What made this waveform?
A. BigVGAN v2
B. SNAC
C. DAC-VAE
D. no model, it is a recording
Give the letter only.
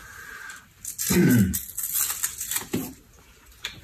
D